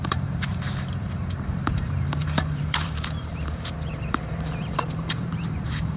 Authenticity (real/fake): fake